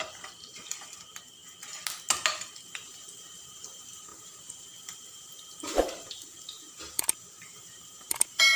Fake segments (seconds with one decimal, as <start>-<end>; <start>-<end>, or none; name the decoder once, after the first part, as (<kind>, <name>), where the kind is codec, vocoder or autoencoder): 0.0-1.4 (vocoder, BigVGAN v2); 2.4-8.6